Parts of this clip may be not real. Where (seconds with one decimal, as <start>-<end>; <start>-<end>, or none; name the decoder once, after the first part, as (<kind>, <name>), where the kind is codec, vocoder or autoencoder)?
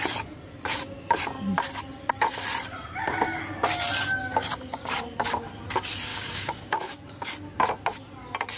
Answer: 6.1-7.0 (codec, DAC)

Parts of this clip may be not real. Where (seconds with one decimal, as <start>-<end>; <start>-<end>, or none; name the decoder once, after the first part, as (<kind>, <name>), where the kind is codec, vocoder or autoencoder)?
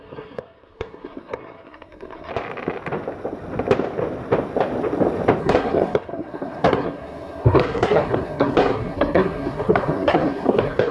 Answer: 0.0-2.3 (codec, SNAC); 5.4-10.9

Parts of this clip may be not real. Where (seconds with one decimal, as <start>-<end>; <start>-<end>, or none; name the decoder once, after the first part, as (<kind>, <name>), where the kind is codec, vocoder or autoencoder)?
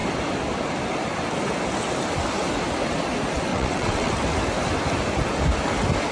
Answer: 3.5-4.1 (vocoder, WaveNeXt)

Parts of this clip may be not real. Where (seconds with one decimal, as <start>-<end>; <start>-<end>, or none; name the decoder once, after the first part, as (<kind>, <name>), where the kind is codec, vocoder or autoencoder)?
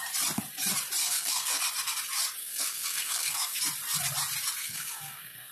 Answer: 1.0-1.6 (codec, SNAC); 2.4-3.6; 4.6-5.5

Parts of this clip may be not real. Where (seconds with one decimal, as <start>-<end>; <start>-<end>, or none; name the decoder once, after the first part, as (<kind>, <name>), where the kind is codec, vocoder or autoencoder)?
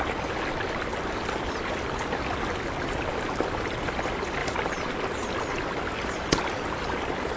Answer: none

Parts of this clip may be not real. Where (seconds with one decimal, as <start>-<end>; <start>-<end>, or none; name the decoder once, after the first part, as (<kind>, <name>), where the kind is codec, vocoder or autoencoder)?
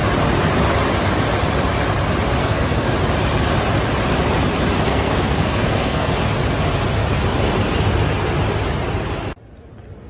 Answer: 2.4-2.9 (codec, SNAC); 4.9-6.1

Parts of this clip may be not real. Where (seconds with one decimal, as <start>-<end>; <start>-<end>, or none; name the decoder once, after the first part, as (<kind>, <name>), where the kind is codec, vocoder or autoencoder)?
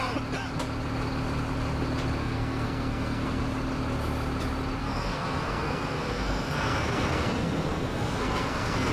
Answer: 2.2-3.4 (codec, SNAC); 4.8-8.9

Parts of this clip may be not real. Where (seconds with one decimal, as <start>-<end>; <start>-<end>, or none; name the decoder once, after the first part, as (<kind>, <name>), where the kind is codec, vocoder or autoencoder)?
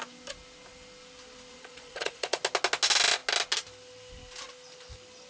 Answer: 1.5-2.4 (vocoder, Vocos)